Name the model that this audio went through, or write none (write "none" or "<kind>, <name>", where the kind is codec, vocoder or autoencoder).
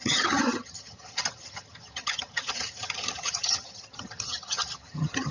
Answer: vocoder, HiFi-GAN